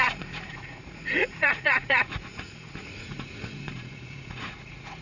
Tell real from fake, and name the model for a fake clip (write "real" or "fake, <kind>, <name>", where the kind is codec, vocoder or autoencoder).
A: fake, vocoder, Vocos